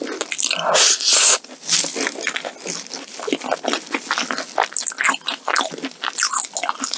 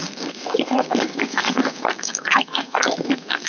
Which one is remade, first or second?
second